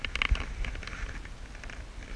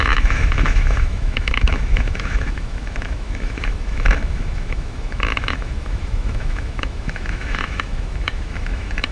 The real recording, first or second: first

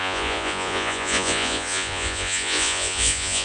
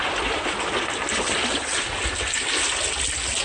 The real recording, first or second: second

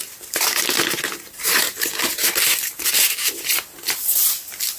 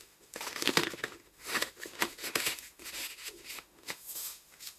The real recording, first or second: first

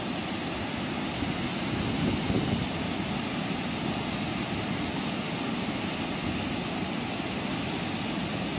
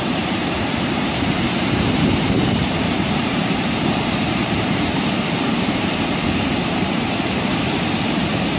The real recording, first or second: first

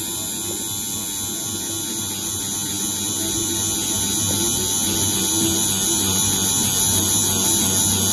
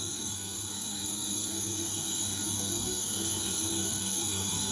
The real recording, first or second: first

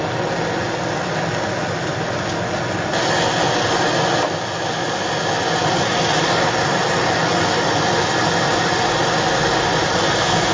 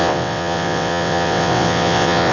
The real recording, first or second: first